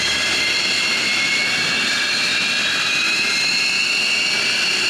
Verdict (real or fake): real